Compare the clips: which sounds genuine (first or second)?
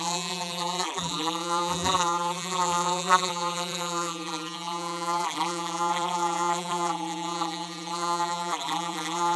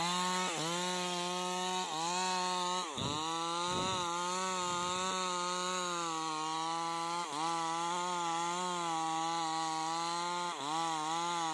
second